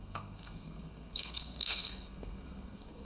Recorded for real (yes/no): no